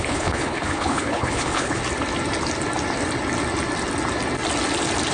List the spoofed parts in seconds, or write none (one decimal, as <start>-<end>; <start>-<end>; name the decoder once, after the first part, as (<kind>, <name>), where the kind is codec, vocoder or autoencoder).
0.0-1.8 (codec, HILCodec)